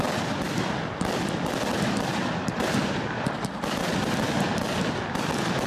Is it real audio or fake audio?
real